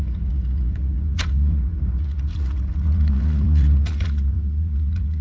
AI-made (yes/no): yes